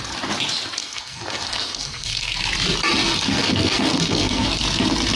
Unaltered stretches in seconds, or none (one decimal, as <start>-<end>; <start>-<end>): 0.0-0.8; 2.4-3.0; 4.5-5.2